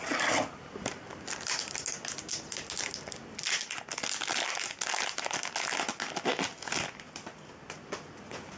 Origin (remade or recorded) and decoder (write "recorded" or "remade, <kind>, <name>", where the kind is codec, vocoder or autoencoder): recorded